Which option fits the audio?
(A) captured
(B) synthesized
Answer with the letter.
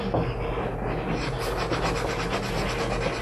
A